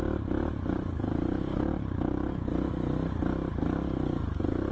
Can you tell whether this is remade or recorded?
recorded